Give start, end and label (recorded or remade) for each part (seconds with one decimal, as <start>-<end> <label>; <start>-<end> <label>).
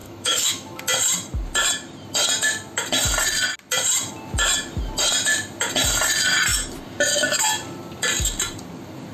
0.0-0.8 remade; 0.8-9.1 recorded